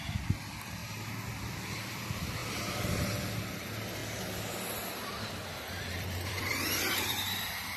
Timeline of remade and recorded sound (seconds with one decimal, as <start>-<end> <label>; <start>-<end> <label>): 0.0-0.8 remade; 0.8-1.4 recorded; 1.4-4.0 remade; 4.0-5.5 recorded; 5.5-7.8 remade